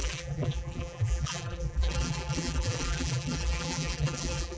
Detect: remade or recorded remade